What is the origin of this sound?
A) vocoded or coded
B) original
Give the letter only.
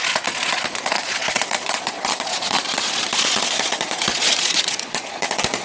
A